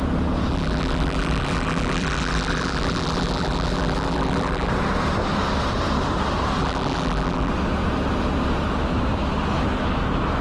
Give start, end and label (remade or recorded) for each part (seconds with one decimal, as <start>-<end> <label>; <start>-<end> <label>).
0.0-0.5 recorded; 0.5-4.7 remade; 4.7-6.6 recorded; 6.6-7.5 remade; 7.5-10.4 recorded